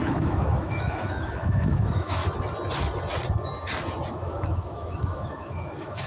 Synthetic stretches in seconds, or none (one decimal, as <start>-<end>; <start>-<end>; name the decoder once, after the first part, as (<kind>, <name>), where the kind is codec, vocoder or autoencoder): 0.0-2.2 (autoencoder, DAC-VAE); 4.1-6.1